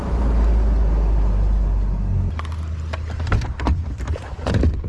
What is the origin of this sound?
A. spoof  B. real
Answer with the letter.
B